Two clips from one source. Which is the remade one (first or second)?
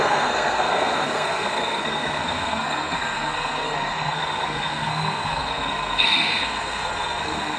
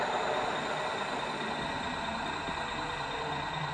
first